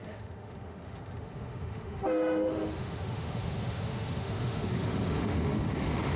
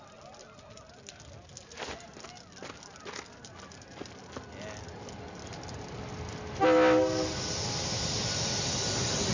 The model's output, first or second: first